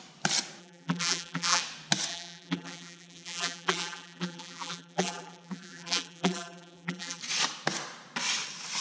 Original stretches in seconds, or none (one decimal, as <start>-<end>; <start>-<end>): 0.0-0.6; 1.6-2.1; 7.2-8.8